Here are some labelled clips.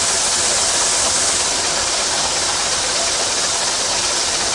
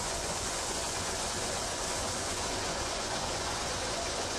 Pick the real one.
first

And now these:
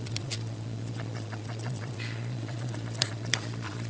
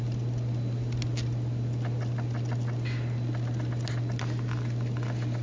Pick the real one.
second